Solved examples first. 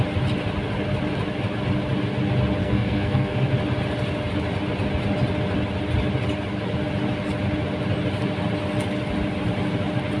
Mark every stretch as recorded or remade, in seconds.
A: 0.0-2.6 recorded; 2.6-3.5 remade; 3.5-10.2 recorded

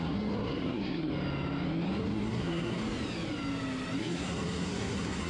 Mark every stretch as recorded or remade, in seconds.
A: 0.0-1.1 remade; 1.1-2.0 recorded; 2.0-2.8 remade; 2.8-4.0 recorded; 4.0-5.3 remade

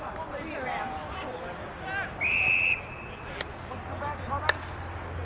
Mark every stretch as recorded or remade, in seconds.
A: 0.0-5.2 recorded

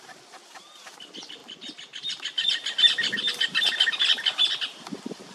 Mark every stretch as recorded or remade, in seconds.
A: 0.0-5.3 recorded

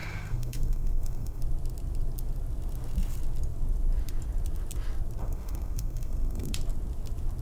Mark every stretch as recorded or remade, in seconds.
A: 0.0-1.4 remade; 1.4-5.2 recorded; 5.2-6.5 remade; 6.5-7.4 recorded

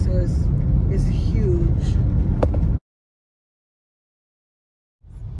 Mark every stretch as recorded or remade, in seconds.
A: 0.0-5.4 recorded